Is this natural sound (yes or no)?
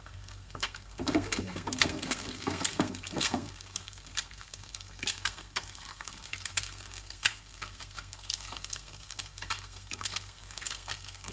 no